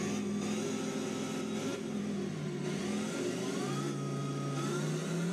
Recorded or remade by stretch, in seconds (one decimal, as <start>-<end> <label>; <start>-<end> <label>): 0.0-1.7 recorded; 1.7-2.8 remade; 2.8-5.3 recorded